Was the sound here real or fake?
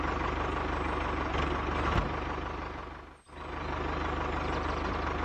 real